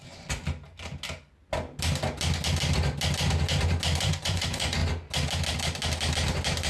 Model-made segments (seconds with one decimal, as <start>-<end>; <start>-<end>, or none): 0.0-0.4; 4.0-4.8